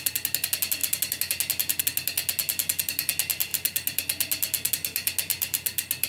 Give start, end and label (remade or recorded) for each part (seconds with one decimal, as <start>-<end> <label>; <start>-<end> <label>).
0.0-6.1 recorded

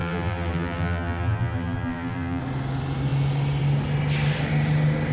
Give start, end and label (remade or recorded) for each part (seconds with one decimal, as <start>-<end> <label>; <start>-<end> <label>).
0.0-2.4 remade; 2.4-5.1 recorded

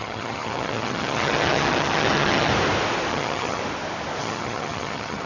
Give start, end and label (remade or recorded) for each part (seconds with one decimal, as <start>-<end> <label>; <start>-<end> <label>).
0.0-2.5 remade; 2.5-3.1 recorded; 3.1-3.6 remade; 3.6-4.2 recorded; 4.2-5.3 remade

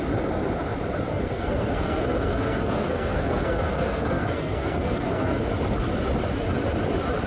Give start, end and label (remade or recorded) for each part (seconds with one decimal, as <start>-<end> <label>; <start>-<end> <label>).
0.0-1.1 recorded; 1.1-5.5 remade; 5.5-7.3 recorded